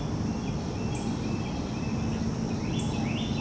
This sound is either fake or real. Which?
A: real